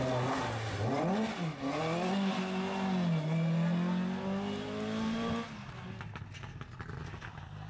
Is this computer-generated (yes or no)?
no